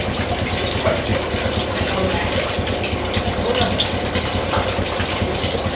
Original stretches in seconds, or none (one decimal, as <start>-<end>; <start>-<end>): 0.0-5.7